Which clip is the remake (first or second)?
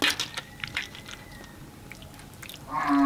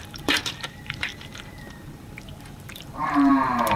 second